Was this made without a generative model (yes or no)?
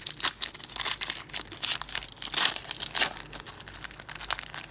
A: yes